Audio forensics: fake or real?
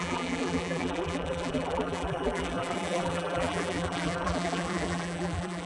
fake